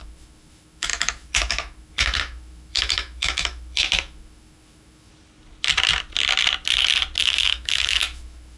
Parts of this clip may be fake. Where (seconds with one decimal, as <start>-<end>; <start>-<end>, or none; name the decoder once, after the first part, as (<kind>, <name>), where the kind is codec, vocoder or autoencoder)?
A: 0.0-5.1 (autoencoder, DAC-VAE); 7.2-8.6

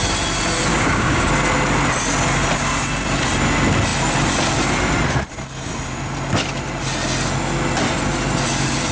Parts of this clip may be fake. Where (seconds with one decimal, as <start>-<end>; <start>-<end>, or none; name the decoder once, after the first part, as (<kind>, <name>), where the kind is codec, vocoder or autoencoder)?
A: 0.7-1.3 (codec, DAC)

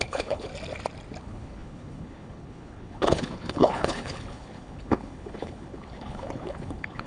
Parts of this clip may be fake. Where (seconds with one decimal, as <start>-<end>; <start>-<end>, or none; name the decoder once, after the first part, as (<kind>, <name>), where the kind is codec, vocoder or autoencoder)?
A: 0.0-0.5 (codec, HILCodec); 1.2-7.1